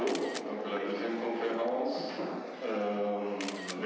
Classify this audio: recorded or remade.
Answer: recorded